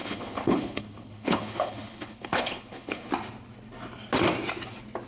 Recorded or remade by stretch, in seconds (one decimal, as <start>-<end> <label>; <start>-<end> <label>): 0.0-3.1 remade; 3.1-5.1 recorded